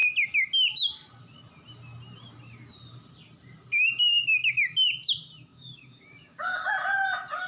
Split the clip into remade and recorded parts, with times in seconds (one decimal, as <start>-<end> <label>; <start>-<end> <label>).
0.0-5.5 recorded; 5.5-6.7 remade; 6.7-7.5 recorded